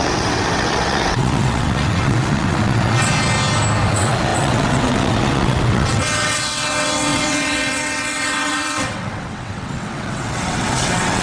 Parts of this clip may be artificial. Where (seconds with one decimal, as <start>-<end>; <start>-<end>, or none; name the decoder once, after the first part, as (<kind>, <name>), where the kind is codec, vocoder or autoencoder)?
0.0-3.1 (vocoder, WaveNeXt); 3.9-11.2